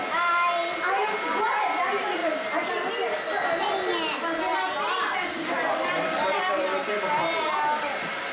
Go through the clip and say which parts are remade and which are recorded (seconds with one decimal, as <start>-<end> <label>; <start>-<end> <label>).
0.0-8.3 recorded